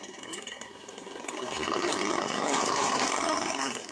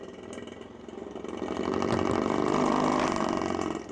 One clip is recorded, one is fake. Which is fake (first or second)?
first